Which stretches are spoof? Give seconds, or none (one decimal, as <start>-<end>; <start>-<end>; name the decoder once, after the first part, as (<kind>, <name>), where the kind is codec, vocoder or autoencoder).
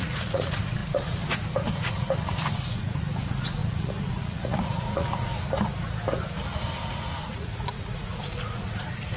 0.0-5.3 (vocoder, Vocos); 7.2-9.2